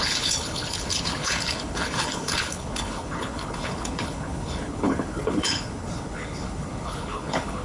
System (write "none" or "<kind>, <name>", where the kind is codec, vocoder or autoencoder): codec, HILCodec